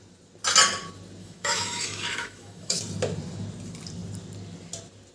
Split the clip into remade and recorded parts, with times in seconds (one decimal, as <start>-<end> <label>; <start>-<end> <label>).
0.0-1.2 recorded; 1.2-2.8 remade; 2.8-5.1 recorded